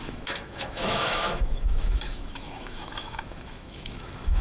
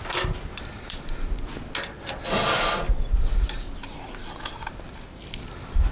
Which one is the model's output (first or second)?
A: first